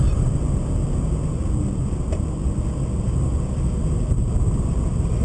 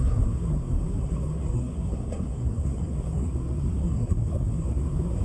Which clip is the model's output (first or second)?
second